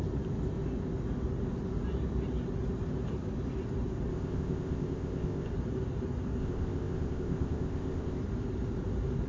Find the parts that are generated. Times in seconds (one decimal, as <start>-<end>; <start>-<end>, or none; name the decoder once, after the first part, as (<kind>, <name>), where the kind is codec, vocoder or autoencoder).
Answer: 4.1-5.5 (codec, ZipCodec); 6.4-8.2